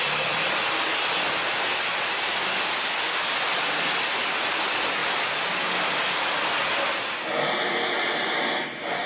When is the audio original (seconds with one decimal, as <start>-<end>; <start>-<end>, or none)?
0.0-9.1